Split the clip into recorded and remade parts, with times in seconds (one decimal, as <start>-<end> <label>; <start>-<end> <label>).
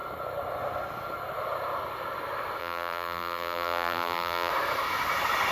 0.0-2.6 recorded; 2.6-4.5 remade; 4.5-5.5 recorded